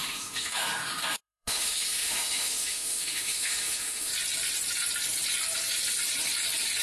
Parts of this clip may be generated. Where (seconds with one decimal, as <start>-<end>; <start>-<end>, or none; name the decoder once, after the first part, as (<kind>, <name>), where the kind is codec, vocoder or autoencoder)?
0.0-4.1 (autoencoder, DAC-VAE)